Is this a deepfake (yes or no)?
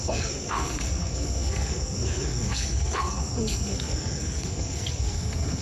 yes